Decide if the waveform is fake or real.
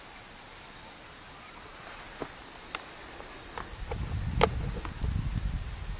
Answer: real